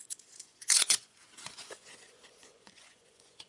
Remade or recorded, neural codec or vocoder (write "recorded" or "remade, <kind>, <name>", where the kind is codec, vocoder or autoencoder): remade, vocoder, Vocos